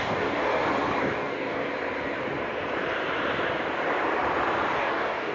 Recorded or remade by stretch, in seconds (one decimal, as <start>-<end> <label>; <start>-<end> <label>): 0.0-0.5 remade; 0.5-1.0 recorded; 1.0-1.6 remade; 1.6-4.8 recorded; 4.8-5.3 remade